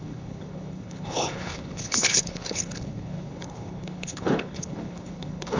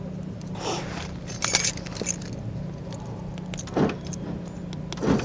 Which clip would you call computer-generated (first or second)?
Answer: first